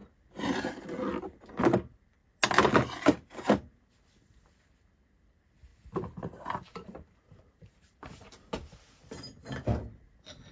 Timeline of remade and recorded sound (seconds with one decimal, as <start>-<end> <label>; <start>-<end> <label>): 0.0-5.7 recorded; 5.7-8.3 remade; 8.3-10.5 recorded